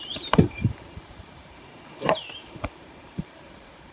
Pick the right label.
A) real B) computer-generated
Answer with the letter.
B